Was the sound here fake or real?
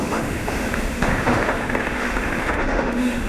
fake